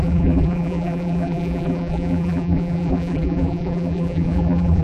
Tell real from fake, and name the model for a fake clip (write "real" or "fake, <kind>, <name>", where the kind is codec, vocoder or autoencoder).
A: fake, vocoder, BigVGAN v2